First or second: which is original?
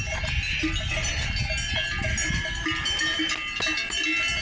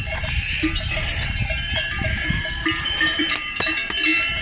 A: first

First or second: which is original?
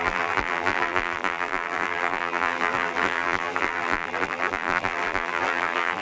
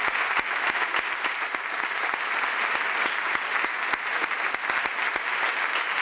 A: second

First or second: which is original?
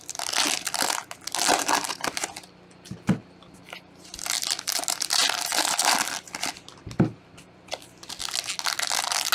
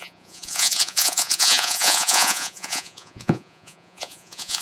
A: first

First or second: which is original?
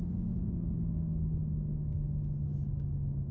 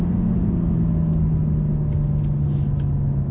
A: second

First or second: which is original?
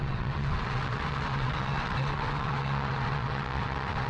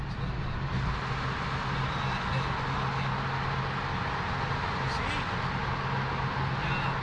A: second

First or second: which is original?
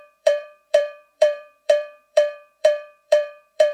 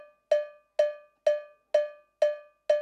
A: second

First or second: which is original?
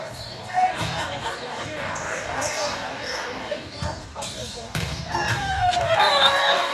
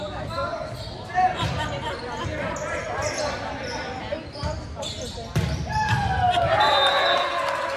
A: second